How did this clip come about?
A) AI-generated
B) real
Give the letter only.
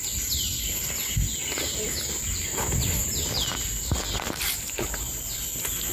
B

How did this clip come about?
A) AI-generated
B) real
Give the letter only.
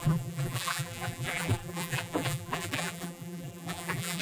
A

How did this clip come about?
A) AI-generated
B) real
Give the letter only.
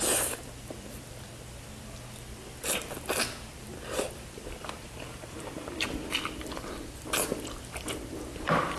A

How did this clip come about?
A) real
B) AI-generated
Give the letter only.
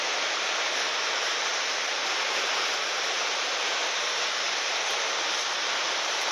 B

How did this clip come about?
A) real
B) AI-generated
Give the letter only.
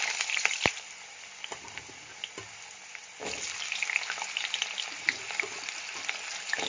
A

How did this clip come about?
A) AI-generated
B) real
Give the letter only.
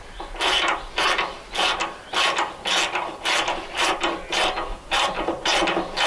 B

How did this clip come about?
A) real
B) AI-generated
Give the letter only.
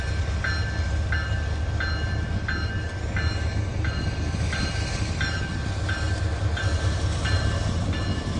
A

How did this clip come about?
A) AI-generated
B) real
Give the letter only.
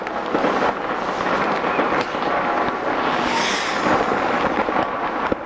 B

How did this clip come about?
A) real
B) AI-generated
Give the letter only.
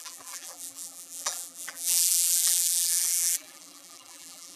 B